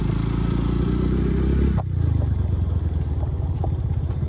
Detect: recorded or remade recorded